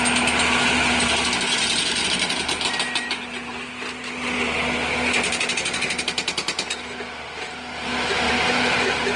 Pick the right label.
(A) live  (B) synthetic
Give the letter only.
A